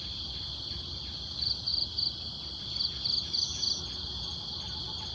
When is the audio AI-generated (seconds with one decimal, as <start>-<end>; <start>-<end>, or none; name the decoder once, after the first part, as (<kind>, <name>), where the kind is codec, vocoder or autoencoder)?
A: none